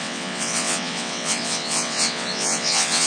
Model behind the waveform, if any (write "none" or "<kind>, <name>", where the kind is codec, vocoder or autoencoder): vocoder, WaveNeXt